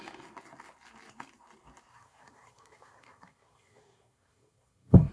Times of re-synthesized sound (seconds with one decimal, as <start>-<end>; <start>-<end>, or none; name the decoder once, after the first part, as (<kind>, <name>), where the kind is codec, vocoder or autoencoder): 1.9-5.1 (codec, SNAC)